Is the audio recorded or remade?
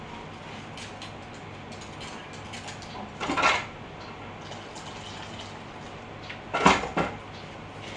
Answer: recorded